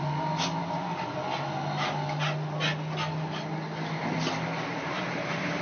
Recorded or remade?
recorded